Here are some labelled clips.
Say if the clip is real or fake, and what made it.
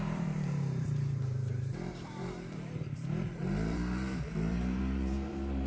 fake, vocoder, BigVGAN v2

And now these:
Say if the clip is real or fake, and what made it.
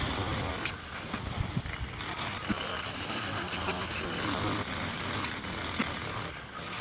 real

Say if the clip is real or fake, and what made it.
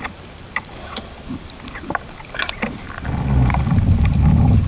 fake, vocoder, BigVGAN v2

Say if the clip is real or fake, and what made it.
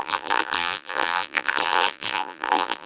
fake, vocoder, BigVGAN v2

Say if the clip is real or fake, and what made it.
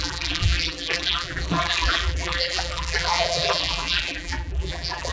fake, vocoder, BigVGAN v2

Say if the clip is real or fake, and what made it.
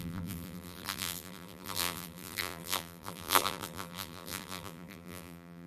fake, vocoder, BigVGAN v2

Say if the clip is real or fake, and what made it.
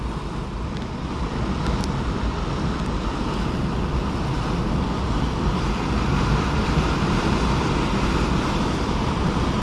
real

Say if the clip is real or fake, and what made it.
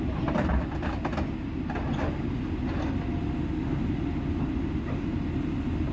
real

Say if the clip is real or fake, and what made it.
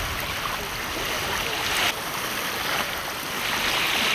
real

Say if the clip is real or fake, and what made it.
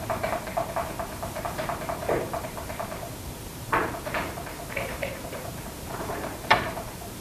fake, vocoder, BigVGAN v2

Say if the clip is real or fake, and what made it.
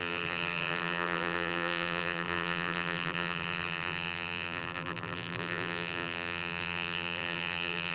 fake, vocoder, BigVGAN v2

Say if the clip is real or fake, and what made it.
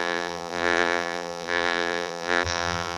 fake, vocoder, BigVGAN v2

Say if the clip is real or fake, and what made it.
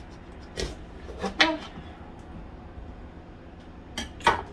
real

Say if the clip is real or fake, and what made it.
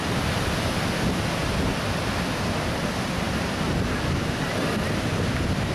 real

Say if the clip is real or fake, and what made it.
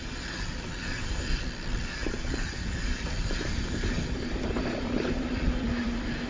fake, vocoder, BigVGAN v2